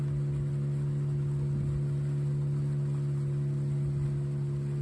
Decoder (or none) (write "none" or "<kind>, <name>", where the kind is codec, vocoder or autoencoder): none